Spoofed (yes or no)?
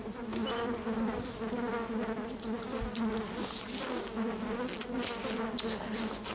no